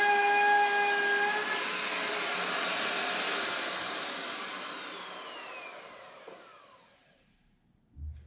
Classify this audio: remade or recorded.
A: recorded